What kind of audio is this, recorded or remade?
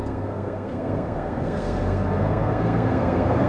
remade